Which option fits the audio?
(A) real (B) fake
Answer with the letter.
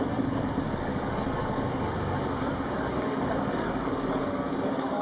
B